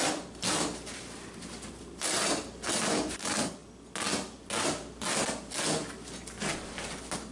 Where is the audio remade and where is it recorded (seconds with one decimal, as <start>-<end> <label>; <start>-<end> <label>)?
0.0-7.3 recorded